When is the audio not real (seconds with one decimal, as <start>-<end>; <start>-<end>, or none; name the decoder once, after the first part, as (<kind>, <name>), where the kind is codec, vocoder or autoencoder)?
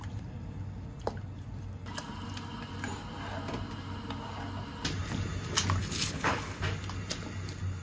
5.8-6.6 (codec, HILCodec)